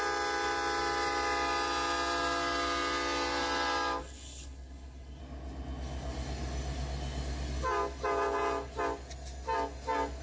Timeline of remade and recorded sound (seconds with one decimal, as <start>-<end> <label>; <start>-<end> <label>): 0.0-4.0 recorded; 4.0-5.2 remade; 5.2-10.2 recorded